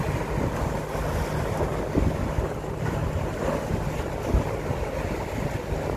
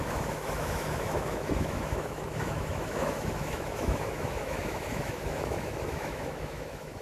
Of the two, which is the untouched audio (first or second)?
first